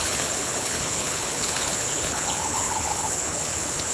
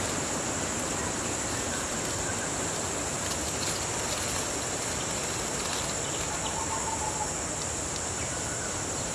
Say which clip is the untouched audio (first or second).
second